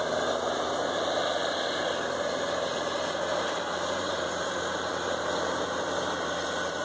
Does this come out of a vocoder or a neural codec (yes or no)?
yes